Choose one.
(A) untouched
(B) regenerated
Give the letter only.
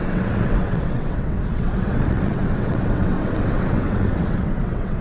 B